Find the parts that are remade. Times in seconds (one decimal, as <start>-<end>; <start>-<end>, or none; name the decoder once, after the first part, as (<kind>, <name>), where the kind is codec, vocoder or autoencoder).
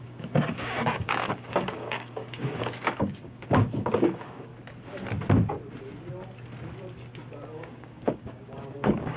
0.0-4.5 (codec, DAC); 7.5-9.2